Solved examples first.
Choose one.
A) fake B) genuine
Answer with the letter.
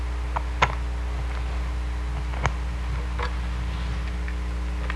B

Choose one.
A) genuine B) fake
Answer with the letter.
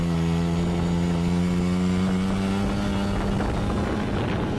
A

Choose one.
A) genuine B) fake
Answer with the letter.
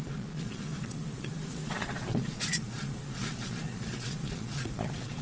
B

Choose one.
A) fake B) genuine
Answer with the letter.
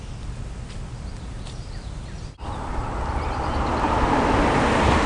B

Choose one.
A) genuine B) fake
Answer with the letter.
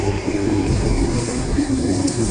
B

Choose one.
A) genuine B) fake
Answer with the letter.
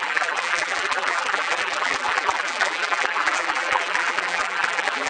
B